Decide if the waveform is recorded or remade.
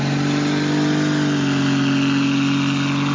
recorded